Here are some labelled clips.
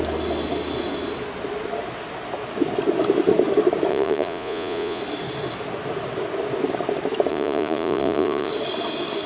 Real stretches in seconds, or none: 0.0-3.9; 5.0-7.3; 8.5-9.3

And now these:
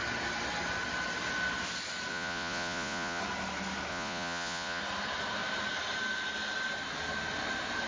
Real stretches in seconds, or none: 0.0-2.1; 3.2-3.9; 4.8-7.9